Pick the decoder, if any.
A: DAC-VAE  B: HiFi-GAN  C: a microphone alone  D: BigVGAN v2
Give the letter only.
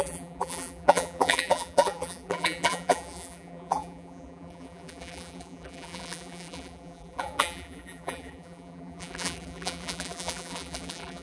D